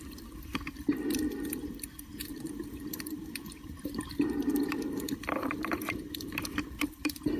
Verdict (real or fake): fake